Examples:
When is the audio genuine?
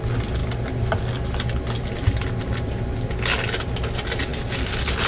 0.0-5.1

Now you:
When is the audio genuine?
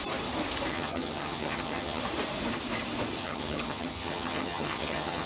0.0-0.7; 2.0-3.2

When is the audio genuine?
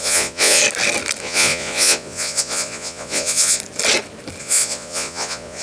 0.6-1.2; 3.6-4.4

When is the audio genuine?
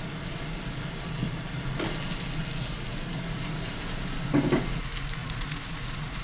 0.0-5.2